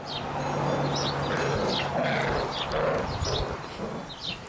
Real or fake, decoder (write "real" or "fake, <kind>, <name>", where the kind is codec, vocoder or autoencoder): real